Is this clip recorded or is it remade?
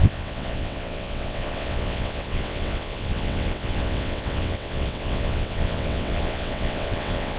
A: remade